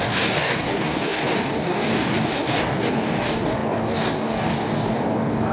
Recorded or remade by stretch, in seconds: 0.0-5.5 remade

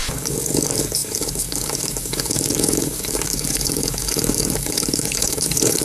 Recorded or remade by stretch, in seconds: 0.0-5.8 remade

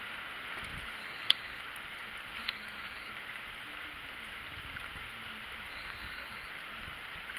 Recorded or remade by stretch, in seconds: 0.0-1.0 recorded; 1.0-1.6 remade; 1.6-2.4 recorded; 2.4-3.1 remade; 3.1-5.7 recorded; 5.7-6.5 remade; 6.5-7.4 recorded

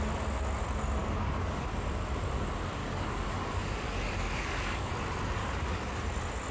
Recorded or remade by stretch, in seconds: 0.0-1.0 recorded; 1.0-1.7 remade; 1.7-2.8 recorded; 2.8-4.9 remade; 4.9-5.4 recorded; 5.4-6.0 remade; 6.0-6.5 recorded